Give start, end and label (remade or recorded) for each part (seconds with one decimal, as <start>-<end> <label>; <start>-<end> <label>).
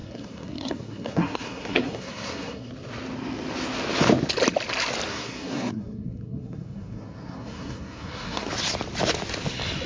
0.0-2.7 remade; 2.7-5.1 recorded; 5.1-8.5 remade; 8.5-9.9 recorded